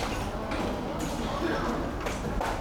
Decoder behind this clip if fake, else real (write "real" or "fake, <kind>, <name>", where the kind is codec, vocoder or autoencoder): real